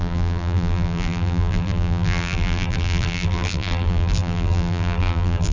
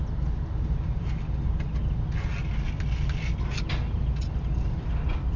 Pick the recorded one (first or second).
second